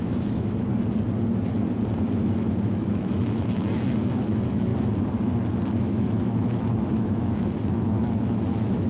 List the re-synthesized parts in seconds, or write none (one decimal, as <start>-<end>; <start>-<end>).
0.0-0.7; 2.5-4.7; 5.8-8.9